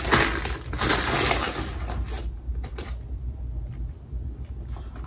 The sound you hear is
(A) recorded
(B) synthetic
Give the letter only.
A